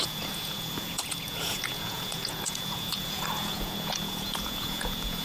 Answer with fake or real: fake